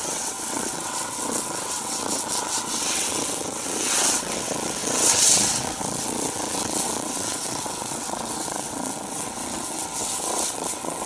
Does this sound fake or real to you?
fake